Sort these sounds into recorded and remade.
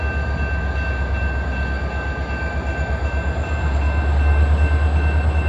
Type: recorded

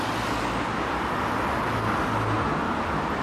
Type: recorded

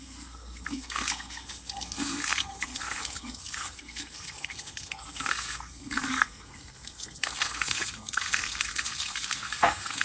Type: remade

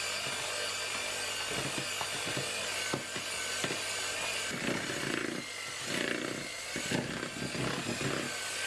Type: recorded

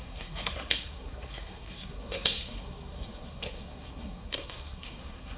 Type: remade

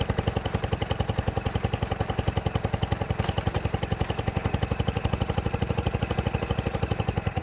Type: recorded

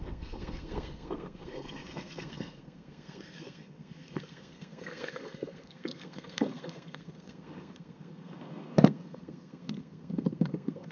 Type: remade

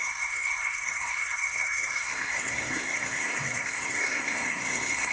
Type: remade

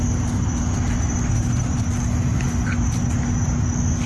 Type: recorded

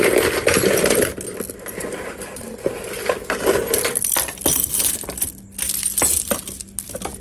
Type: recorded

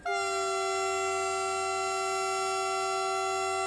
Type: recorded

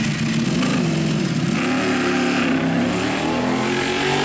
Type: recorded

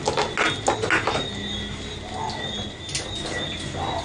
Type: recorded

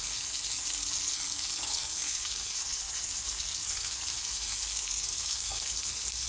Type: remade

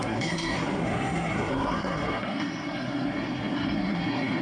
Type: remade